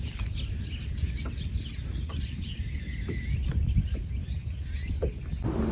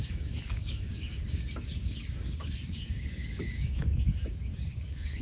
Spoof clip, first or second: second